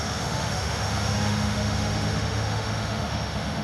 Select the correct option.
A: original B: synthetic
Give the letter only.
B